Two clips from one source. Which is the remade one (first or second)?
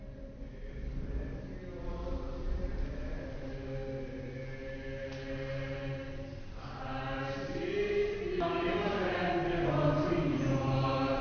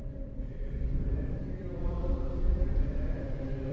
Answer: second